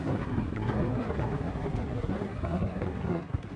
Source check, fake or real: fake